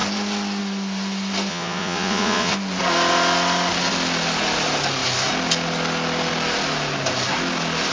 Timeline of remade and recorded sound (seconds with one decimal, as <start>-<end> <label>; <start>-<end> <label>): 0.0-1.5 recorded; 1.5-2.5 remade; 2.5-7.9 recorded